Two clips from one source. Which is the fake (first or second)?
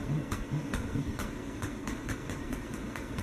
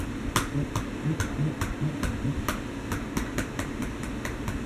first